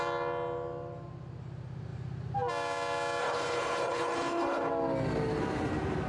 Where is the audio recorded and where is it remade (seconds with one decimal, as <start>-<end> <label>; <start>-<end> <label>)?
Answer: 0.0-3.2 recorded; 3.2-4.7 remade; 4.7-6.1 recorded